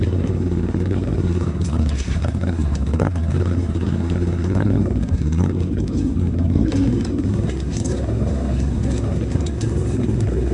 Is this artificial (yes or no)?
yes